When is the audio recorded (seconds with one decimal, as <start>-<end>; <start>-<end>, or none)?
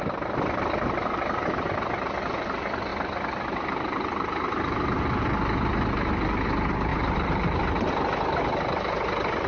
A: 0.0-6.9; 7.9-9.5